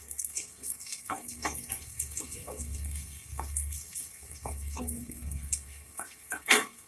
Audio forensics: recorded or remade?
remade